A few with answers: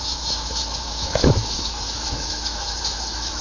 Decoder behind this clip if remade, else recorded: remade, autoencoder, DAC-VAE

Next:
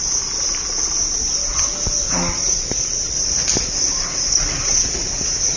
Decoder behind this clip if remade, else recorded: recorded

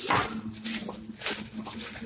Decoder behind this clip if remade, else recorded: recorded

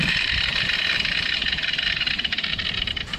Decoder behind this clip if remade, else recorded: remade, vocoder, BigVGAN v2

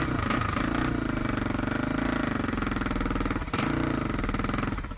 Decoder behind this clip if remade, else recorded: recorded